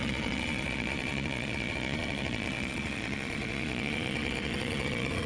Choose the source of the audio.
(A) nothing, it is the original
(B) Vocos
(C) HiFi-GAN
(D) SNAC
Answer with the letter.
B